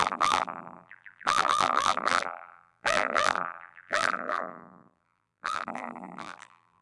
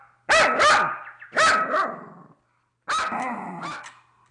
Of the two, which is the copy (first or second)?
first